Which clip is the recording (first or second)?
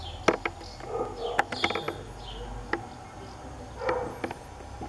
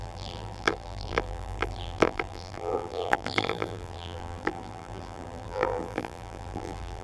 first